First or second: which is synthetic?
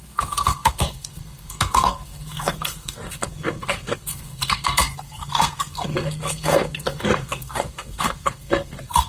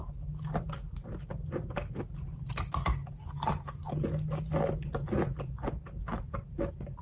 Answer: first